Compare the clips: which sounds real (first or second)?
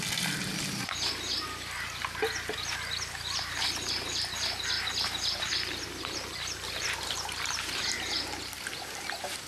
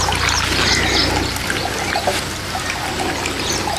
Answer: second